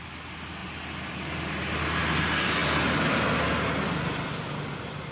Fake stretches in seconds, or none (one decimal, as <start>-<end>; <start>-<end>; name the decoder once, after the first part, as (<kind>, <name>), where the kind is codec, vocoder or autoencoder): none